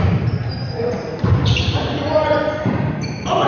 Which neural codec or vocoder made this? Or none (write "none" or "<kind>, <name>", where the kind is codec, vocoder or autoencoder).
vocoder, BigVGAN v2